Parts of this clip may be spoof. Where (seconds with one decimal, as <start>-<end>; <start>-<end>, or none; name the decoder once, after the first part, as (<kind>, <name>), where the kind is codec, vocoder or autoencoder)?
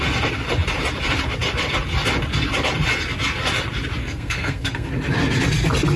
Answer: 4.0-4.9 (codec, SNAC)